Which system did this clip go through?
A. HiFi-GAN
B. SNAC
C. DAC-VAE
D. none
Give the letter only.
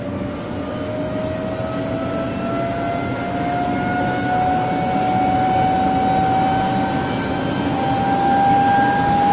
D